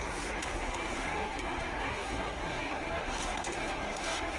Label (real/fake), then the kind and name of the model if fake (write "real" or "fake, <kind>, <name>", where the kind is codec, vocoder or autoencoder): fake, codec, SNAC